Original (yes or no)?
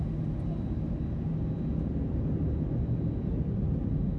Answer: yes